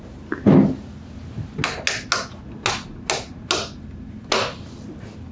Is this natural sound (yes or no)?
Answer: yes